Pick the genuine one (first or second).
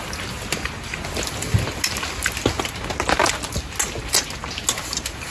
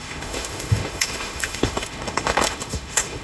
first